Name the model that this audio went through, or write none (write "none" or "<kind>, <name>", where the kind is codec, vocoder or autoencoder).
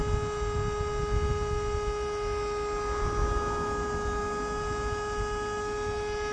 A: none